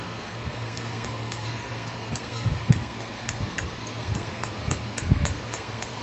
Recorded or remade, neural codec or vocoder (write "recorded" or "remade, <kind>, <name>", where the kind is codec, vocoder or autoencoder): remade, codec, SNAC